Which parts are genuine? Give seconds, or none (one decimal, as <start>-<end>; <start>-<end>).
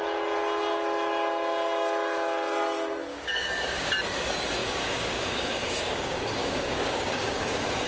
0.0-3.1; 3.9-4.6